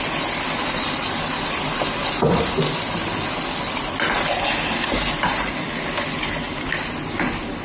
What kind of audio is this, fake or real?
real